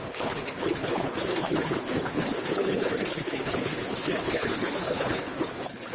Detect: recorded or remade remade